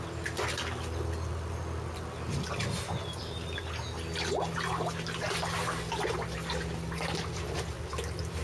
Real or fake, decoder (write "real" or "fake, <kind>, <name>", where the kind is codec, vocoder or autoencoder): real